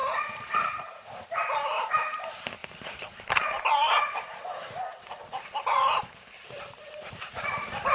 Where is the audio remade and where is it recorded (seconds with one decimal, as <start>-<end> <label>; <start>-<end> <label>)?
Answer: 0.0-7.9 remade